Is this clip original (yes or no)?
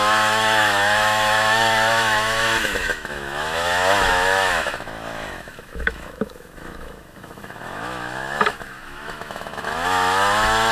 no